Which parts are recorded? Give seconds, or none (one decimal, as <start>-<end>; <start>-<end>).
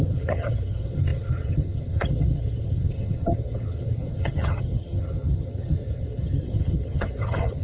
none